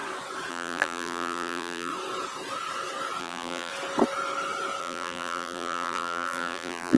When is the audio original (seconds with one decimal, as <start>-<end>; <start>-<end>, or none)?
0.0-0.5; 1.9-3.2; 3.7-4.8